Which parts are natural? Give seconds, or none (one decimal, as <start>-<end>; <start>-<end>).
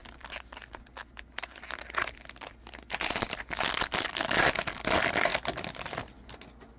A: 0.0-4.1; 5.3-6.8